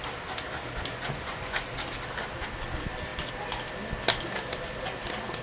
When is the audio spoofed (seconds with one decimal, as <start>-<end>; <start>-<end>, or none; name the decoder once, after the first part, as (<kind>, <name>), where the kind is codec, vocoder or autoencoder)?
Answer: 0.9-1.7 (vocoder, Vocos)